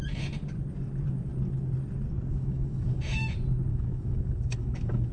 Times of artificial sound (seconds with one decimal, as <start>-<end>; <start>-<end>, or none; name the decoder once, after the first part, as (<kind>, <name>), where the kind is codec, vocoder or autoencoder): 2.3-3.0 (autoencoder, DAC-VAE); 3.7-5.1